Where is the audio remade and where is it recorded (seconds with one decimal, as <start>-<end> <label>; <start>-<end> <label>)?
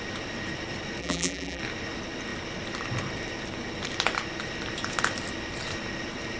0.0-1.0 recorded; 1.0-1.6 remade; 1.6-6.4 recorded